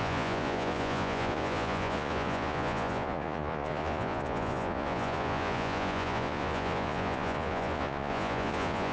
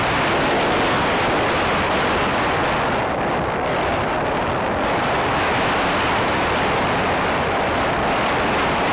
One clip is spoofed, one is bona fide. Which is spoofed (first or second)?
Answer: first